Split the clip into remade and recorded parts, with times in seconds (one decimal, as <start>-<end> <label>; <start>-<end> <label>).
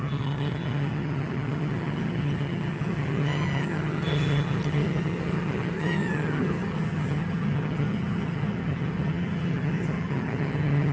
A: 0.0-10.9 remade